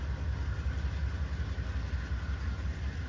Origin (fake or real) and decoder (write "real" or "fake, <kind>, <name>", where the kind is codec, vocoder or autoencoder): real